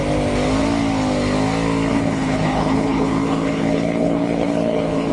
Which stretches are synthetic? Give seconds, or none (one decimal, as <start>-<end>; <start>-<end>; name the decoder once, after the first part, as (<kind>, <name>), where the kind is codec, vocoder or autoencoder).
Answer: 1.9-5.1 (codec, HILCodec)